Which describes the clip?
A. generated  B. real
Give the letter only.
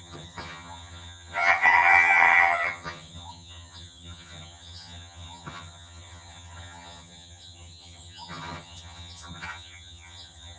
A